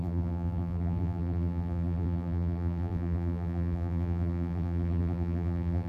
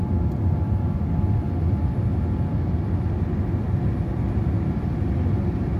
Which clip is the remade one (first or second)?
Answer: first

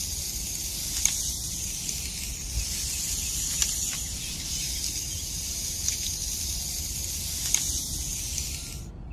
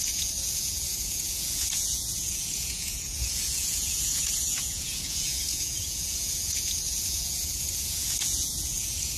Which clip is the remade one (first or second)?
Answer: second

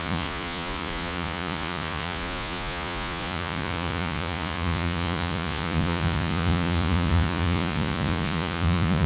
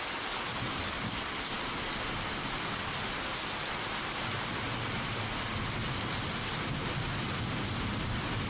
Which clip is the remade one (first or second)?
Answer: first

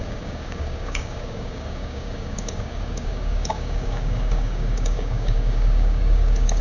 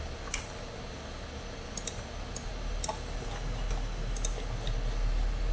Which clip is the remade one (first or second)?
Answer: first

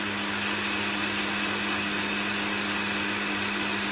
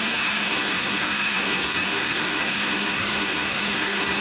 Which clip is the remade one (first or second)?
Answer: second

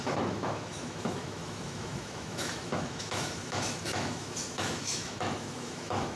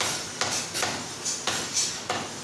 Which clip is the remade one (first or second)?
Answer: first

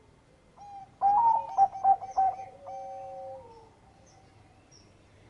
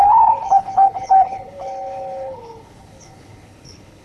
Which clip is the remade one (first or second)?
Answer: second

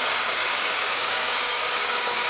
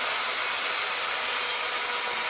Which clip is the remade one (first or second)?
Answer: first